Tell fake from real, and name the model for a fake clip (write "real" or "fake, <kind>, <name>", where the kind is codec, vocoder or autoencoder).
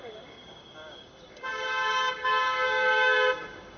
fake, codec, DAC